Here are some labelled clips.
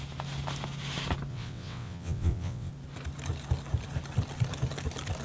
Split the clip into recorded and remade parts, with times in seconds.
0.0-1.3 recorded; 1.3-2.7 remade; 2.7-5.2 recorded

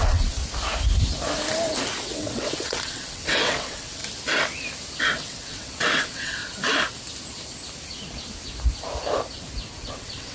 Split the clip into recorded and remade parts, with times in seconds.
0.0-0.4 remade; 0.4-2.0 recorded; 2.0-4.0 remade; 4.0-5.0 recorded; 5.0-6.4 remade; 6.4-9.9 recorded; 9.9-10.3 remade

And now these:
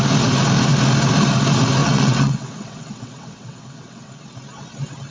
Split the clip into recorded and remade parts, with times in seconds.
0.0-1.8 recorded; 1.8-4.1 remade; 4.1-5.1 recorded

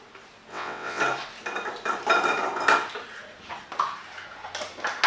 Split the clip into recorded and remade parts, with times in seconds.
0.0-0.5 recorded; 0.5-1.0 remade; 1.0-5.1 recorded